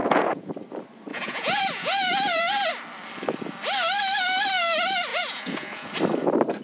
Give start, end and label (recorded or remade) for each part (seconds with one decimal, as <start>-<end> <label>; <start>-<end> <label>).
0.0-0.5 remade; 0.5-1.1 recorded; 1.1-2.7 remade; 2.7-5.1 recorded; 5.1-5.9 remade; 5.9-6.6 recorded